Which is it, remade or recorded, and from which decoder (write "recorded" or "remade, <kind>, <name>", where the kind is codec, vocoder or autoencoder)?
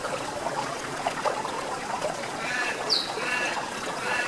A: remade, vocoder, Vocos